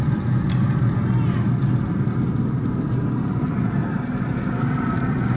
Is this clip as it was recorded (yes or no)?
yes